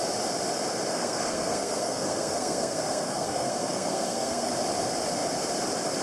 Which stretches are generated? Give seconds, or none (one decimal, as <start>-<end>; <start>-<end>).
0.9-4.5